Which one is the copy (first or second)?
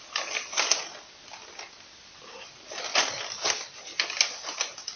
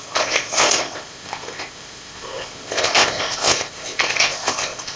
second